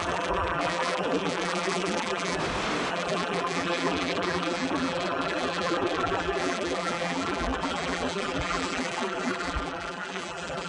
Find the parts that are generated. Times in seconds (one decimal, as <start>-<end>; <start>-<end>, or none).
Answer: 0.0-2.4; 2.9-10.7